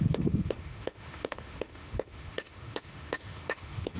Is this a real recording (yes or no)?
no